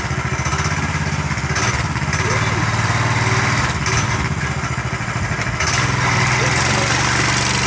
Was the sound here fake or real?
real